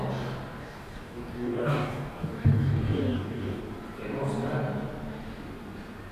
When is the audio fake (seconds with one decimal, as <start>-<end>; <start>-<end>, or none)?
0.6-3.6